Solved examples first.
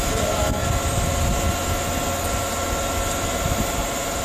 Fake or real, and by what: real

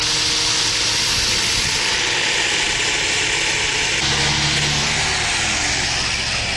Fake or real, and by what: real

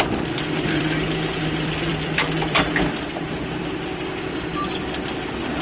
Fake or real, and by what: fake, vocoder, BigVGAN v2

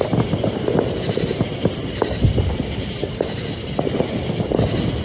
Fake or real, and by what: real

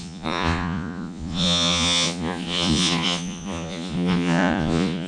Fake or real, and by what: fake, vocoder, Vocos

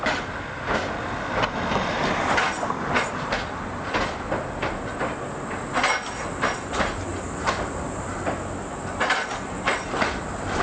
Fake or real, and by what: real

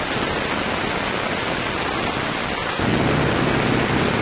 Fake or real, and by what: real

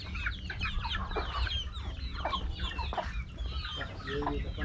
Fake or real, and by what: real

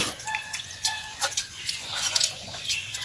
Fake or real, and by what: fake, vocoder, Vocos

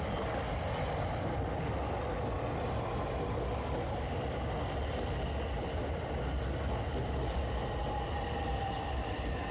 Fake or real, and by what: real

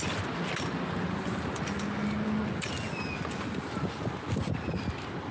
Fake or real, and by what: real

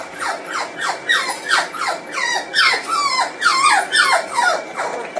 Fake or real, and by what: fake, vocoder, BigVGAN v2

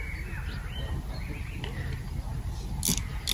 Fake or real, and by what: real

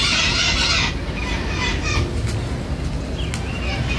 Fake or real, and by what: real